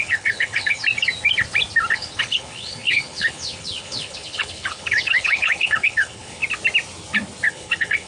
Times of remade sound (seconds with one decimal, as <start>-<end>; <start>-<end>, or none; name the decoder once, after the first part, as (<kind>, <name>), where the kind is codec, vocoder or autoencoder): 0.0-0.8 (codec, HILCodec); 1.9-6.4; 7.5-8.1

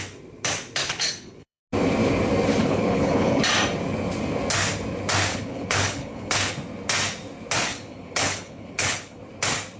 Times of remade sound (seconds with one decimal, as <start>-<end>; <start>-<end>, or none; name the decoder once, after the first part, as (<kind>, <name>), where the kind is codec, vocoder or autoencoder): 0.8-1.6 (codec, HILCodec); 2.6-3.4; 5.3-6.5; 7.7-9.2

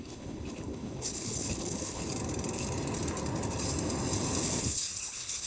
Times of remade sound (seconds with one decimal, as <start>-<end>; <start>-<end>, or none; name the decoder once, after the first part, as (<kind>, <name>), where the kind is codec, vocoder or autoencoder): 0.0-2.0 (codec, HILCodec); 4.6-5.5

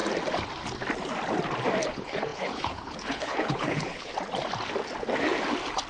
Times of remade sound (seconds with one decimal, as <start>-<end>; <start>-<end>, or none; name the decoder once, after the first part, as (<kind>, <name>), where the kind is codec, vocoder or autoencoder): 1.9-4.1 (codec, HILCodec)

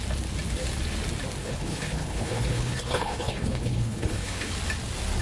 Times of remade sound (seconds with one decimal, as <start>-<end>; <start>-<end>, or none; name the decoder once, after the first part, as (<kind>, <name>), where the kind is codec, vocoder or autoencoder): 1.4-4.5 (codec, HILCodec)

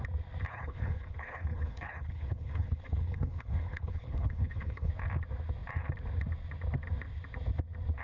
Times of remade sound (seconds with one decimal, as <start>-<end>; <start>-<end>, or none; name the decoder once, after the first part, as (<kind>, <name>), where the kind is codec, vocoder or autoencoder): 0.5-4.9 (codec, HILCodec)

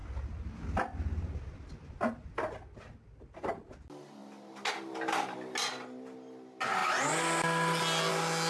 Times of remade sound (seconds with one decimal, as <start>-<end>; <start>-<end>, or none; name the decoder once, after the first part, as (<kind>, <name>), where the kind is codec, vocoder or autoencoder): none

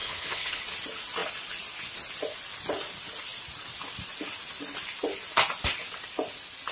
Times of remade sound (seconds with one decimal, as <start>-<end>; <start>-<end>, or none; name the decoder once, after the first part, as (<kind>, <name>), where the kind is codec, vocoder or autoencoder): 0.0-0.6 (codec, HILCodec)